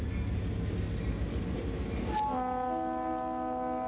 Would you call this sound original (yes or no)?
yes